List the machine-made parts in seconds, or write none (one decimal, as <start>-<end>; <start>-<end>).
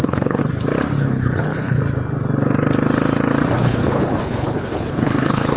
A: 0.0-0.4; 1.0-1.8; 3.5-5.6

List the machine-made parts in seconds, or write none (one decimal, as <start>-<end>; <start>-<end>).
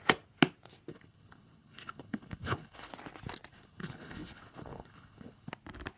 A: 0.9-2.9; 3.5-5.5